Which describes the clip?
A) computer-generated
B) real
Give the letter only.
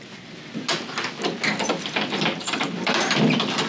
B